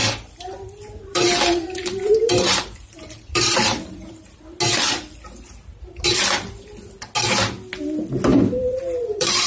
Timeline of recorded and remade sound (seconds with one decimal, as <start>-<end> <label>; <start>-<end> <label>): 0.0-4.1 remade; 4.1-8.3 recorded; 8.3-9.5 remade